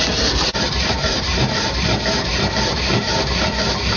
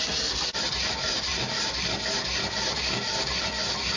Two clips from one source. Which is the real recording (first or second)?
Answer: second